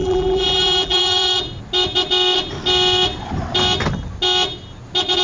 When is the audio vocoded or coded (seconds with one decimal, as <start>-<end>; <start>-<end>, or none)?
0.0-1.4